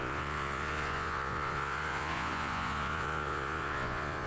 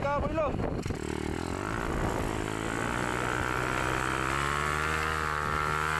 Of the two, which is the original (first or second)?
second